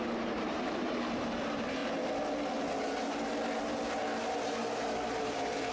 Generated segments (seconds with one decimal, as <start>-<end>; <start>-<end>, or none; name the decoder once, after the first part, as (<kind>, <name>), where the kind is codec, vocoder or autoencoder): 0.0-1.8 (vocoder, BigVGAN v2); 5.2-5.7